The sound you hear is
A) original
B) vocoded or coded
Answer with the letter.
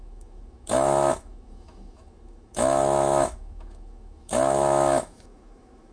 B